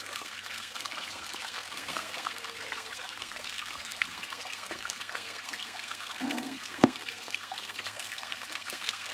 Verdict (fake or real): fake